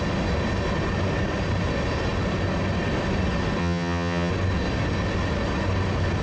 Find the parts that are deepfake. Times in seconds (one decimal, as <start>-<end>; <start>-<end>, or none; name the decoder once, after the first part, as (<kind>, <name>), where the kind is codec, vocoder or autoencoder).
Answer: 3.6-4.3 (vocoder, HiFi-GAN)